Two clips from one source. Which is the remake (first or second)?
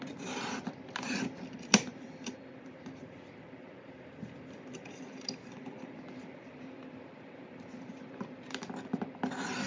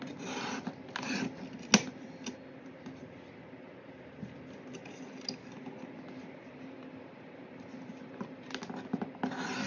first